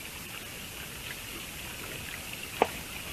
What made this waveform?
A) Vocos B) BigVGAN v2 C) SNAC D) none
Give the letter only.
D